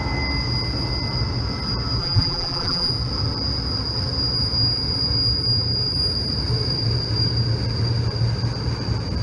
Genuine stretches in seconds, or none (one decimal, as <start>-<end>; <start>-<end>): 0.0-2.0; 2.9-9.2